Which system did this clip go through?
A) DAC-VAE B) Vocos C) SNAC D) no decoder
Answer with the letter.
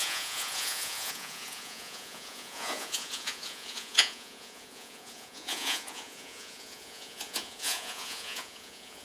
B